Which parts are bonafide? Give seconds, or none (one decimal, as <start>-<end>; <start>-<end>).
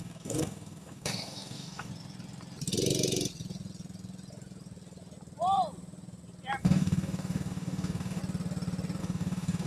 1.9-6.6; 8.2-9.0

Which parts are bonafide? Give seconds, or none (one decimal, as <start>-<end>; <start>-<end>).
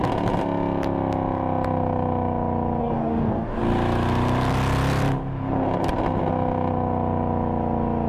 0.0-2.8; 3.6-8.1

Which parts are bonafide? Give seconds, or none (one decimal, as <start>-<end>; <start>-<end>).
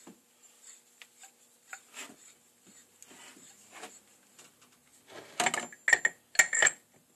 0.0-7.1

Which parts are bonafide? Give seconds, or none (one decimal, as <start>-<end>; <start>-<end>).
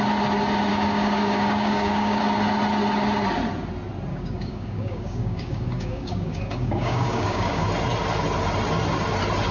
0.0-0.7; 2.2-4.1; 7.7-9.5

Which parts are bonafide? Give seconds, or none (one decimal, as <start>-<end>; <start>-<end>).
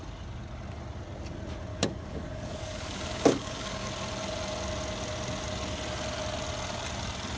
0.0-1.7; 3.9-7.4